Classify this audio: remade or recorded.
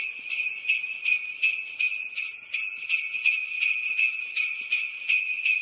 recorded